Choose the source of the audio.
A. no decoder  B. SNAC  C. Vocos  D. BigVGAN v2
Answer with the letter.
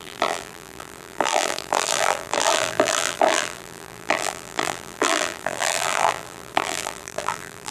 D